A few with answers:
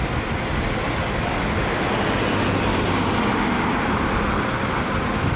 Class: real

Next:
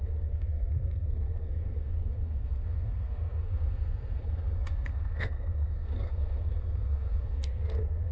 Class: fake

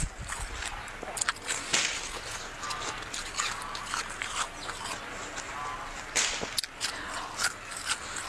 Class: real